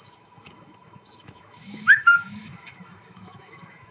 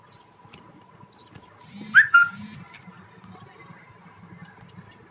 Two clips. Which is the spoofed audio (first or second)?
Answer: first